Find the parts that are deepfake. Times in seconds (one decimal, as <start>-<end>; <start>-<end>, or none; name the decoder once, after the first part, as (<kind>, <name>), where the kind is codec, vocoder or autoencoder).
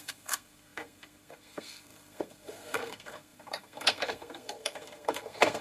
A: 0.0-5.6 (codec, SNAC)